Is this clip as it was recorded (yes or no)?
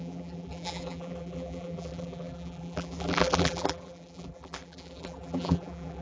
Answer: no